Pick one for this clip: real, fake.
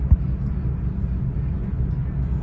real